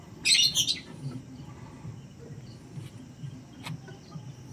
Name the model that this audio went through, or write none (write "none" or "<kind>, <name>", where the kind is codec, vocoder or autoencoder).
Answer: none